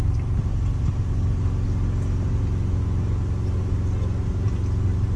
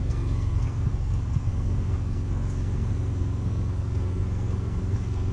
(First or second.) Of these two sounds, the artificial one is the second